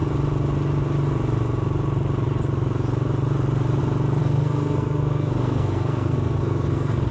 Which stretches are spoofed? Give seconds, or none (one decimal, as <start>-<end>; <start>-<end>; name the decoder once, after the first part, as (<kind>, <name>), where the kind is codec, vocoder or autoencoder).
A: 4.2-7.1 (codec, SNAC)